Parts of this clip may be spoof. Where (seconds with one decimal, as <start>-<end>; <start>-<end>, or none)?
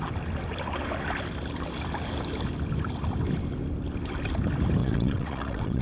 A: 4.8-5.8